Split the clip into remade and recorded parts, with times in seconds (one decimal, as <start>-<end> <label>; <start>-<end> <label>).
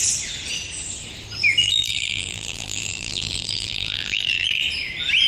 0.0-1.6 recorded; 1.6-4.6 remade; 4.6-5.3 recorded